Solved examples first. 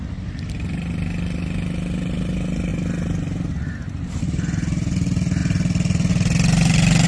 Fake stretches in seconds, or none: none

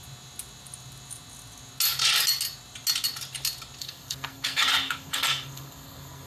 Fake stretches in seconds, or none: 3.8-6.3 (codec, SNAC)

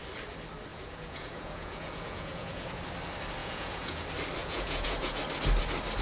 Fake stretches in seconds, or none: 0.7-2.8 (vocoder, Vocos); 3.4-4.0; 4.4-5.2

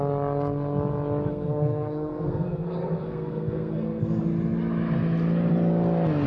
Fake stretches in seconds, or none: 1.3-4.2 (codec, SNAC)

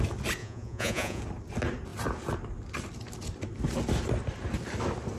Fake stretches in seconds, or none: 0.4-1.2 (vocoder, Vocos)